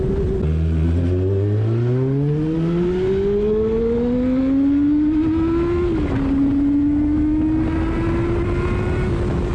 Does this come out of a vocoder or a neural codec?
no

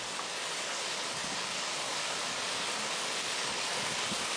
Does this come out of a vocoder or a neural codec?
yes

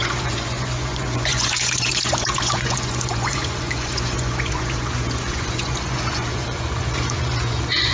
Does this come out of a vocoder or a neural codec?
yes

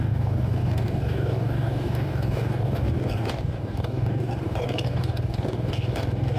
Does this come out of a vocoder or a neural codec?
yes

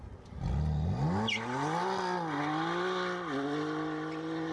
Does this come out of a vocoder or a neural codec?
no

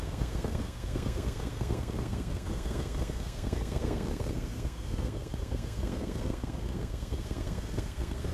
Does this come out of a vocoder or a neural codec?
yes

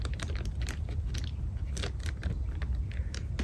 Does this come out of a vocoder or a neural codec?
no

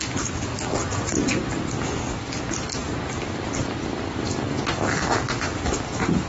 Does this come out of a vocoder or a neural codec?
no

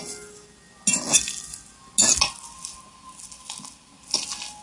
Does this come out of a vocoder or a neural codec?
no